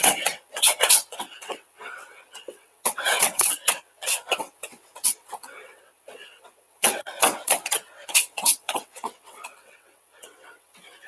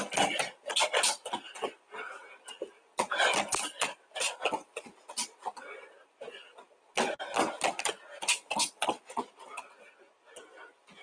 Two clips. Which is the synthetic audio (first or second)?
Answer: first